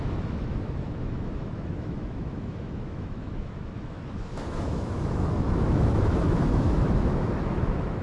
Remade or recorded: remade